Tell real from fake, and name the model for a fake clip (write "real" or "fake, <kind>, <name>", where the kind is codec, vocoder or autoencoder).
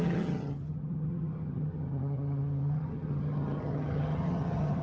fake, vocoder, HiFi-GAN